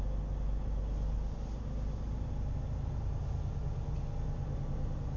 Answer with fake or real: real